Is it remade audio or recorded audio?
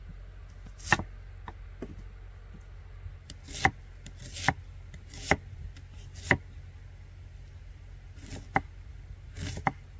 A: recorded